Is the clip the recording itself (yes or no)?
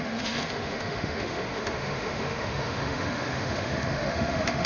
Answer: no